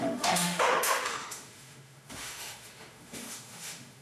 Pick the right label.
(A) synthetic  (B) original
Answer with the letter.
A